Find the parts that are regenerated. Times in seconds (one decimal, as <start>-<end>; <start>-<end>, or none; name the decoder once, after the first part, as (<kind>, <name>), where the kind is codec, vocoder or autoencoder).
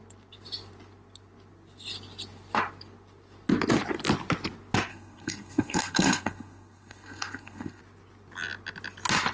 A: 4.9-7.8 (codec, SNAC)